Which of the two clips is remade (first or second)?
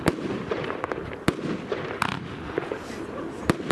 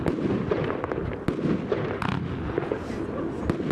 first